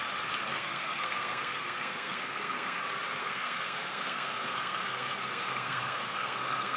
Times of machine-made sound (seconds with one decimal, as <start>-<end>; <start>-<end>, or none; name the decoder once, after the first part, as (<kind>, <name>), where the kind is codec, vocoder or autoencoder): 0.5-2.8 (codec, SNAC); 3.2-6.8